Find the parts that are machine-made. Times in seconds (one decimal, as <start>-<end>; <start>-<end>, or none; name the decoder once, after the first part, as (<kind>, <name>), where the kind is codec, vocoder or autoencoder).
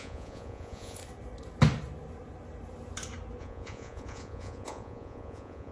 0.0-1.0 (vocoder, Vocos); 3.4-5.7